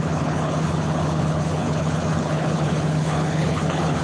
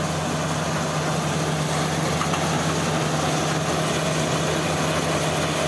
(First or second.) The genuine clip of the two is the second